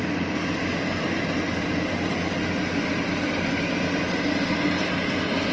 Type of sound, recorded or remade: recorded